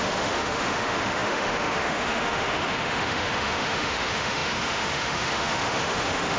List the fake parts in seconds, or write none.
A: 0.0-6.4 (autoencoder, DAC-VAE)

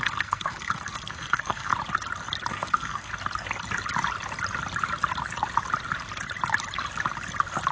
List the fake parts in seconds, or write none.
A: 0.0-1.7 (codec, SNAC); 2.5-3.1

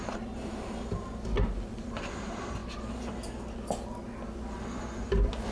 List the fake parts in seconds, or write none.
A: none

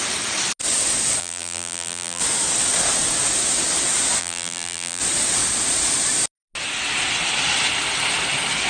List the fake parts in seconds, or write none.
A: 1.2-2.2 (vocoder, BigVGAN v2); 4.2-5.0